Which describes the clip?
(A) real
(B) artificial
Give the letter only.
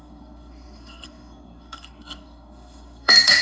B